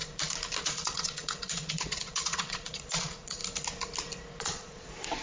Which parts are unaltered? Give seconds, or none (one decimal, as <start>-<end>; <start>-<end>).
0.0-0.6; 3.4-4.4